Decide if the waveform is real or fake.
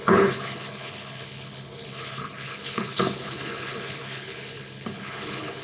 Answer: fake